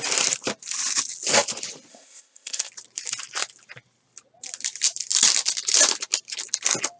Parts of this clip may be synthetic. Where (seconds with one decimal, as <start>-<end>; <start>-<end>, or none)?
1.9-2.7